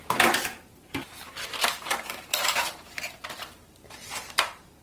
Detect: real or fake fake